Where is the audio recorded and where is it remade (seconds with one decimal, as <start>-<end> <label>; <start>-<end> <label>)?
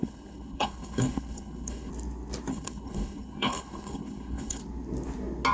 0.0-1.9 remade; 1.9-2.5 recorded; 2.5-4.6 remade; 4.6-5.5 recorded